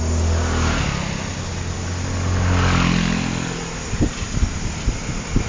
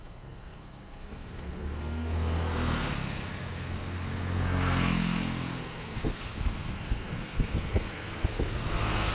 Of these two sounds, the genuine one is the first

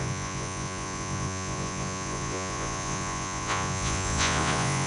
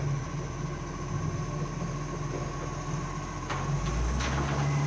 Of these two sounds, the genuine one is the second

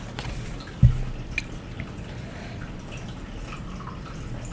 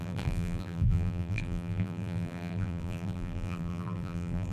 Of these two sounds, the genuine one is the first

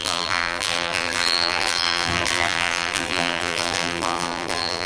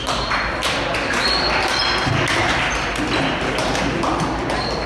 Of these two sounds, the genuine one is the second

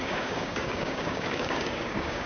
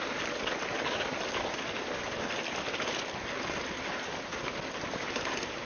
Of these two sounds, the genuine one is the second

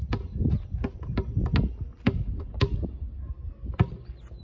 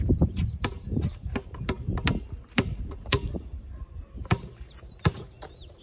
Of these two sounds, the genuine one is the first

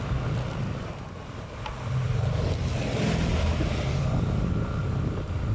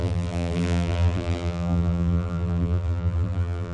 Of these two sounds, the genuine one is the first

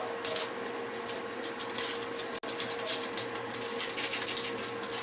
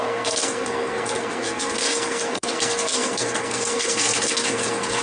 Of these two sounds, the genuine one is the first